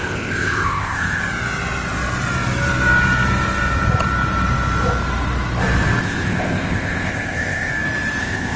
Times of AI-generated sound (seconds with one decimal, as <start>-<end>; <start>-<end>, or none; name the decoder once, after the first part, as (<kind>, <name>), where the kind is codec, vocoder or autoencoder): 0.0-1.2 (codec, ZipCodec); 6.0-7.7; 8.2-8.6

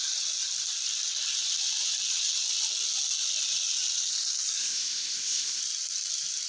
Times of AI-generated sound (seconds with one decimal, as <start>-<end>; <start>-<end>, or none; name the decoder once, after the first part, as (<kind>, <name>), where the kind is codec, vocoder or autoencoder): 4.6-5.6 (codec, ZipCodec)

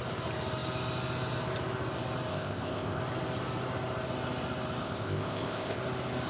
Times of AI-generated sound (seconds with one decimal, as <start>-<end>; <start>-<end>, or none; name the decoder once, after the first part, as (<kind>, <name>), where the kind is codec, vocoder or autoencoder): 2.3-3.0 (codec, ZipCodec); 4.8-5.8

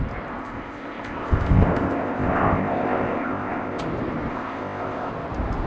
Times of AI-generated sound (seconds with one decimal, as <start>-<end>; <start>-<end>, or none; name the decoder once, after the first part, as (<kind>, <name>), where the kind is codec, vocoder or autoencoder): 0.4-3.8 (codec, ZipCodec); 4.3-5.1

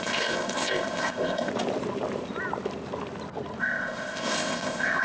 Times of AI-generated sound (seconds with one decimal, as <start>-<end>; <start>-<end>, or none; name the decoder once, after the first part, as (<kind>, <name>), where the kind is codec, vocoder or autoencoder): 0.0-1.5 (codec, ZipCodec); 3.6-5.0

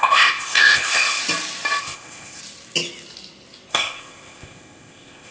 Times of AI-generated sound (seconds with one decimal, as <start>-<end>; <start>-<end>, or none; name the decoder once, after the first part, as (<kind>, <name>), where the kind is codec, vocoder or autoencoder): 0.0-1.2 (codec, ZipCodec); 1.8-2.4; 3.7-5.3